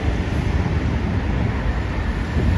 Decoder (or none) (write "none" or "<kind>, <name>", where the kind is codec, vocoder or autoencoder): none